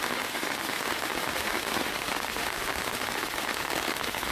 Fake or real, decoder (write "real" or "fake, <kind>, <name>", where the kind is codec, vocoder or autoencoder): fake, autoencoder, DAC-VAE